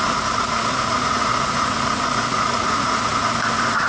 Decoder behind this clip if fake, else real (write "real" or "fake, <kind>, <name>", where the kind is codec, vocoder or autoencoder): fake, vocoder, Vocos